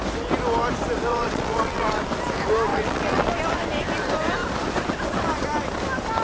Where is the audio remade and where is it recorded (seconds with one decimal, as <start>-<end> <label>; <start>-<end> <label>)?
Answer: 0.0-1.1 recorded; 1.1-2.0 remade; 2.0-2.7 recorded; 2.7-3.3 remade; 3.3-6.2 recorded